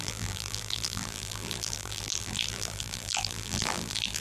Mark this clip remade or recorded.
remade